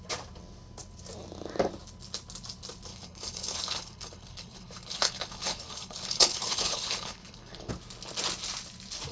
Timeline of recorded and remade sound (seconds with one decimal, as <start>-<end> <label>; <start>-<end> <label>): 0.0-2.9 recorded; 2.9-7.7 remade; 7.7-9.1 recorded